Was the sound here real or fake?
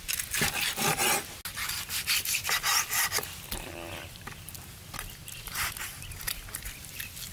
real